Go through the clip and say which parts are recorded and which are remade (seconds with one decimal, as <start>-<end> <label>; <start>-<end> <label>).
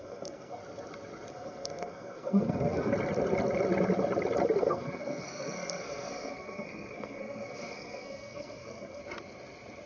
0.0-0.6 remade; 0.6-1.3 recorded; 1.3-2.9 remade; 2.9-4.6 recorded; 4.6-9.0 remade; 9.0-9.9 recorded